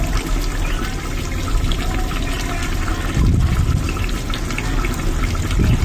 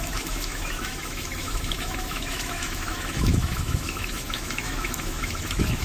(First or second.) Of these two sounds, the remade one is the second